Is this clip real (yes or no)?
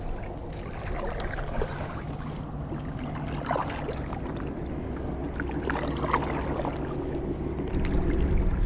yes